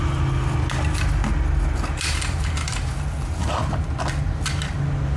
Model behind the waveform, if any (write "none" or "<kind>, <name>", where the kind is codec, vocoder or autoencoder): none